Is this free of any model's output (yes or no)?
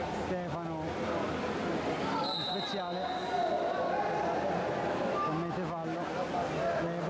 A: yes